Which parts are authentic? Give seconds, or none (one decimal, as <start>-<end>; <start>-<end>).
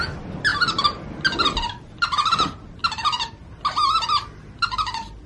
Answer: 0.0-5.3